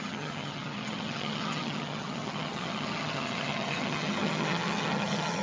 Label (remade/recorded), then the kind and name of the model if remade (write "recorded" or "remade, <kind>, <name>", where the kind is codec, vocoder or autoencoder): remade, vocoder, HiFi-GAN